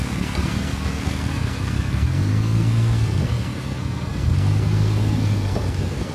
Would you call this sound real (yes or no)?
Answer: no